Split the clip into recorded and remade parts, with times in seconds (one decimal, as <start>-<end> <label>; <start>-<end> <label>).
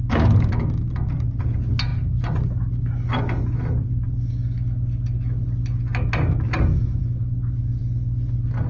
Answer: 0.0-8.7 recorded